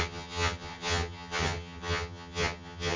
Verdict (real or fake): fake